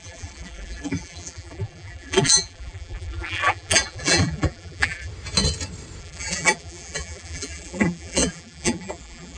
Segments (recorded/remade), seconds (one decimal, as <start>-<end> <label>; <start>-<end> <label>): 0.0-5.1 remade; 5.1-6.0 recorded; 6.0-9.4 remade

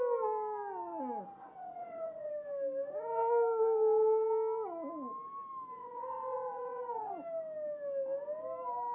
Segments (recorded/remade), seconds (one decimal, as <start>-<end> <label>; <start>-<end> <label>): 0.0-1.4 recorded; 1.4-2.3 remade; 2.3-5.8 recorded; 5.8-7.1 remade; 7.1-8.9 recorded

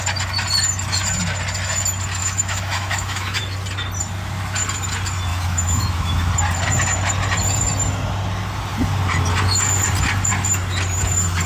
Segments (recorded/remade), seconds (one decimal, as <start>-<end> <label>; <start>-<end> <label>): 0.0-2.2 recorded; 2.2-3.4 remade; 3.4-5.3 recorded; 5.3-6.3 remade; 6.3-11.5 recorded

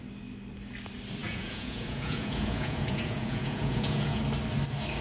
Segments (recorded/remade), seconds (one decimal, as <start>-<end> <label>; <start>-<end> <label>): 0.0-1.2 recorded; 1.2-4.2 remade; 4.2-5.0 recorded